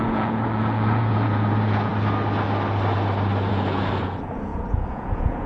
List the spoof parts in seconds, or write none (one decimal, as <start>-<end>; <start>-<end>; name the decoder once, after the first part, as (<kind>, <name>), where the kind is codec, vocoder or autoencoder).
0.0-1.9 (vocoder, Vocos); 3.5-5.5